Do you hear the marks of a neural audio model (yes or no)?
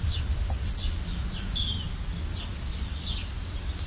no